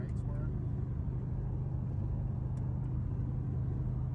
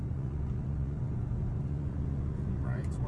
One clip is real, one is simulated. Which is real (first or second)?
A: first